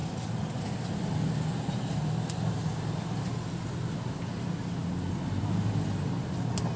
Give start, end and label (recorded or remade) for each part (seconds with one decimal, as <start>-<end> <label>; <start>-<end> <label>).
0.0-6.8 recorded